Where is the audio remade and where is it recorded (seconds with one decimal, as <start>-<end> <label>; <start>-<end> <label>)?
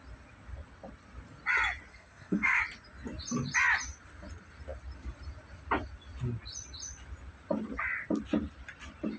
0.0-1.9 recorded; 1.9-2.6 remade; 2.6-9.2 recorded